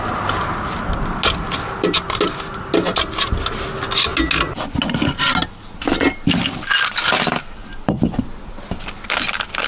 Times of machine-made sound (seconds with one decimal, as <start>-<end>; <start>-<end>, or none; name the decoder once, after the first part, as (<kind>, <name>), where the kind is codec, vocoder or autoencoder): 7.6-8.5 (vocoder, BigVGAN v2)